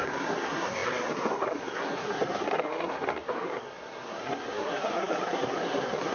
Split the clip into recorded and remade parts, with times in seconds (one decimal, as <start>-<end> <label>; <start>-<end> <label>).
0.0-6.1 remade